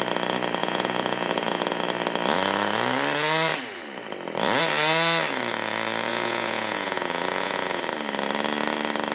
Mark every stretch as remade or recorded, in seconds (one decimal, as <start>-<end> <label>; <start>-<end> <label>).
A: 0.0-0.6 recorded; 0.6-1.8 remade; 1.8-6.1 recorded; 6.1-7.8 remade; 7.8-9.1 recorded